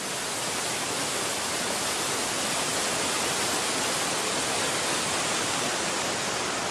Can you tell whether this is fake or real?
real